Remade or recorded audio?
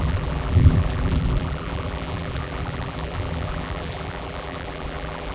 remade